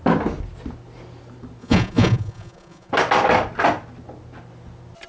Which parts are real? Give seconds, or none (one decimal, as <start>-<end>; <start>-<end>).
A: 0.0-1.6; 2.9-5.1